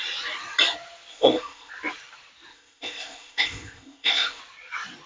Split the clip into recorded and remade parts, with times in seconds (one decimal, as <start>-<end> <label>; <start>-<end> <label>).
0.0-1.1 recorded; 1.1-1.7 remade; 1.7-2.5 recorded; 2.5-4.4 remade; 4.4-5.1 recorded